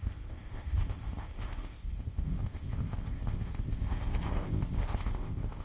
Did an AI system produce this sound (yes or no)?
yes